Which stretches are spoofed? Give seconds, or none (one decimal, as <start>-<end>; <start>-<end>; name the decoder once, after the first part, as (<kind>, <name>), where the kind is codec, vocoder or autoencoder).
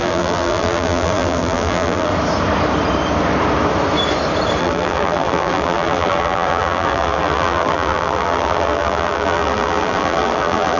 0.0-2.1 (vocoder, BigVGAN v2); 4.6-10.8